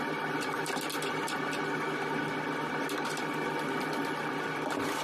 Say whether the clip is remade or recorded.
recorded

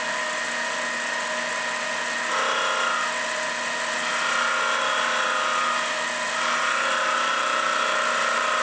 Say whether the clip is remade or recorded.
recorded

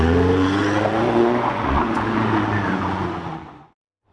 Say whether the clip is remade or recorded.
remade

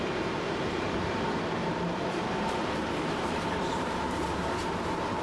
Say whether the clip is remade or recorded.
remade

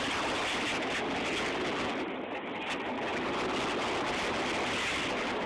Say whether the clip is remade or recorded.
recorded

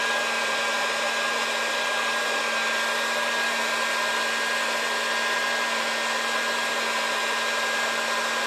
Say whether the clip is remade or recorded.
recorded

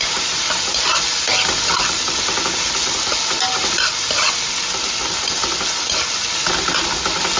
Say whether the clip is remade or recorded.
recorded